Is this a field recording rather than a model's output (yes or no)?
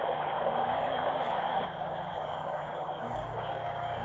no